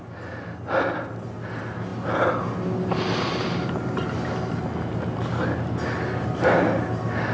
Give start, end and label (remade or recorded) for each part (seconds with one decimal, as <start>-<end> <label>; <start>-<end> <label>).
0.0-7.3 recorded